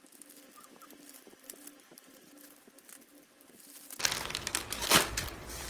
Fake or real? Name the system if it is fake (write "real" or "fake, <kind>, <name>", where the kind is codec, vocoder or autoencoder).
real